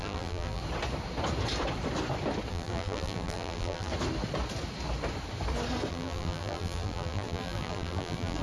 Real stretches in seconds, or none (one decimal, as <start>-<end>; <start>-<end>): 0.6-2.5; 3.9-5.9